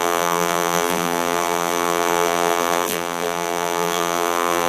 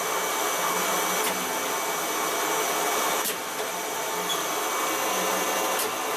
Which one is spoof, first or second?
first